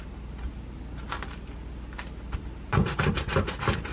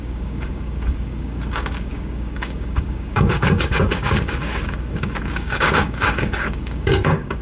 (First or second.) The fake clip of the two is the second